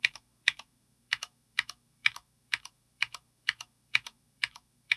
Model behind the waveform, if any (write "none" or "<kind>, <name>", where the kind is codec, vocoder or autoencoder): autoencoder, DAC-VAE